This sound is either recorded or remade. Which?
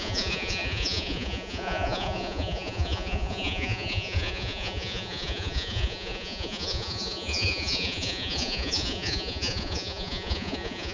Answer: remade